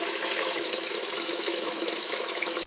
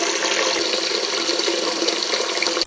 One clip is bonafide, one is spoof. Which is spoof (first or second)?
first